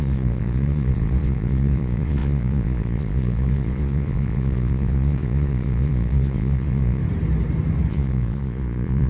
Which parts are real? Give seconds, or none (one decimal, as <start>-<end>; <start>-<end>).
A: 7.0-7.9